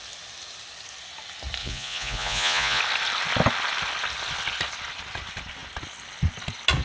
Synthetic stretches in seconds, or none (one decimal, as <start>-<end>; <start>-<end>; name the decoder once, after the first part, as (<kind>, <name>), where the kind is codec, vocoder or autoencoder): 1.6-2.8 (vocoder, Vocos)